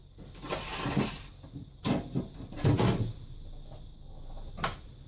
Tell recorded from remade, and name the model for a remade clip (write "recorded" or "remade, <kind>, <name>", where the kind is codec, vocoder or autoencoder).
remade, vocoder, BigVGAN v2